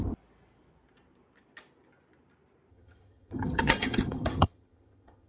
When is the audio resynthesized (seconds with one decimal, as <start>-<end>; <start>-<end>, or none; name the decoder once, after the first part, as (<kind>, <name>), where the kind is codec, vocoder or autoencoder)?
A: 2.7-5.3 (vocoder, HiFi-GAN)